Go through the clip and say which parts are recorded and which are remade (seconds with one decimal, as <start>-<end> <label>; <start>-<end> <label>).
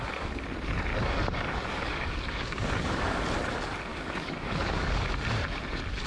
0.0-0.9 recorded; 0.9-3.2 remade; 3.2-3.9 recorded; 3.9-5.1 remade; 5.1-6.1 recorded